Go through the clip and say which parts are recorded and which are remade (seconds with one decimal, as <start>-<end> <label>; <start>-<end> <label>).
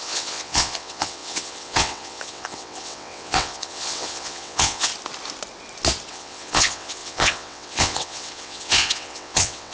0.0-4.9 remade; 4.9-6.1 recorded; 6.1-9.7 remade